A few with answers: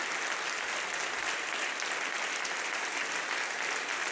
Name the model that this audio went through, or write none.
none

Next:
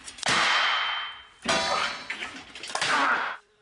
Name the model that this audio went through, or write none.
none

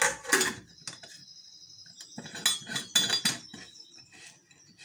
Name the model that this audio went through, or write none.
none